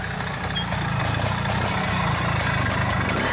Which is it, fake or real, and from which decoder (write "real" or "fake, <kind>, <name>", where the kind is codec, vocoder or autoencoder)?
real